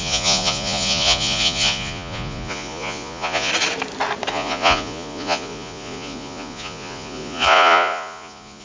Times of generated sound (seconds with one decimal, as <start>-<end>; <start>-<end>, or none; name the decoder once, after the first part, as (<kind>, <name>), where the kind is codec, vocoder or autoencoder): 0.0-3.5 (vocoder, Vocos); 4.3-8.6

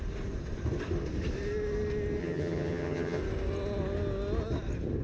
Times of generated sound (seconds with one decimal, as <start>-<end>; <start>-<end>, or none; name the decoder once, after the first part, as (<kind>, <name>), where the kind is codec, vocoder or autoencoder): 2.2-3.2 (vocoder, HiFi-GAN)

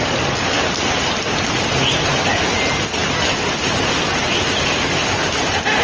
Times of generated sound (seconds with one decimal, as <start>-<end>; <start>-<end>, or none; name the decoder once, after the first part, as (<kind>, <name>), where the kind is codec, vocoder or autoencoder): none

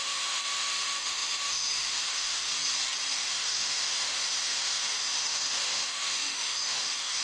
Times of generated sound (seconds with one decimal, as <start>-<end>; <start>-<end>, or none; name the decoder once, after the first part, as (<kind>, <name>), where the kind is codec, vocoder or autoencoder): 0.0-2.5 (autoencoder, DAC-VAE); 3.1-7.2

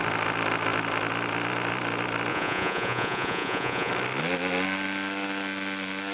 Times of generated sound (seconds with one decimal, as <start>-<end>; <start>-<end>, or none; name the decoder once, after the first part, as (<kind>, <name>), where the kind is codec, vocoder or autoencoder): 2.3-3.9 (vocoder, Vocos)

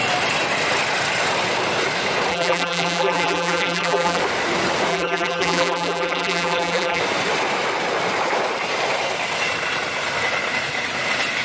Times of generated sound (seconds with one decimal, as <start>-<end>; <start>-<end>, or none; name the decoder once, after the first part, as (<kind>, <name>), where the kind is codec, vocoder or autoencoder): 2.3-4.2 (vocoder, BigVGAN v2); 4.9-7.0